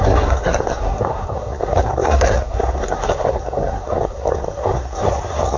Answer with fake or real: fake